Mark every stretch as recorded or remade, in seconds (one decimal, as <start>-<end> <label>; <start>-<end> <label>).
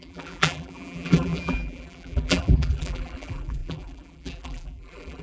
0.0-5.2 remade